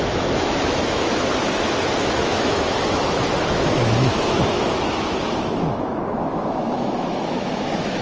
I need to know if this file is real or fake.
fake